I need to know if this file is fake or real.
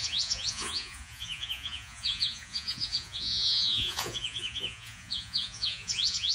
fake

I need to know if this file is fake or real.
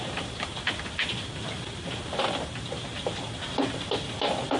real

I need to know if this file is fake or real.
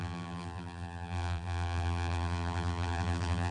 fake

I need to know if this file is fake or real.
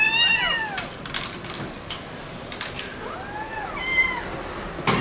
real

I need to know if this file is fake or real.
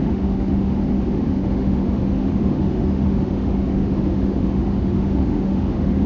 fake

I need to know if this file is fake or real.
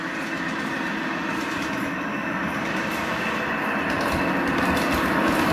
real